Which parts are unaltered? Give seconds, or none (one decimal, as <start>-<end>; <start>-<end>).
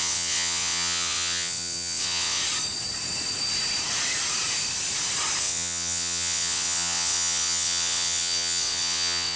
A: 2.4-5.4